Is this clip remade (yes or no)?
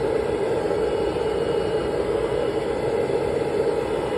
no